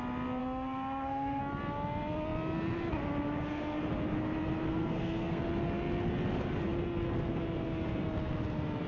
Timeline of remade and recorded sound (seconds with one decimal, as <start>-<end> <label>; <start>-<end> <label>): 0.0-0.4 recorded; 0.4-1.4 remade; 1.4-4.7 recorded; 4.7-5.4 remade; 5.4-8.9 recorded